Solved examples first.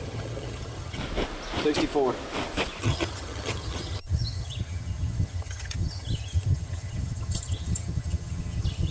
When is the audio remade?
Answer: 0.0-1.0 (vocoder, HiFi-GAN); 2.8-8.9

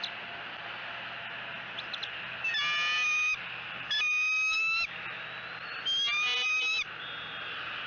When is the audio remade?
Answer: none

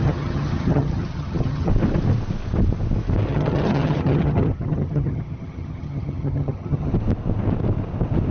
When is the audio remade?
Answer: 0.0-1.7 (vocoder, HiFi-GAN); 3.3-6.9

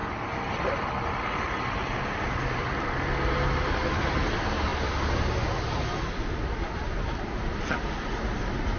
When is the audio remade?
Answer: none

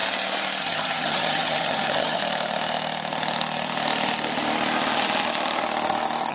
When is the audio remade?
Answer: 0.6-2.2 (vocoder, HiFi-GAN)

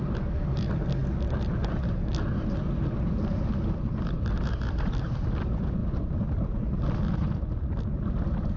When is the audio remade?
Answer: none

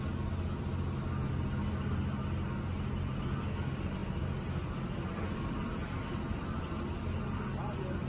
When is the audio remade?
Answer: none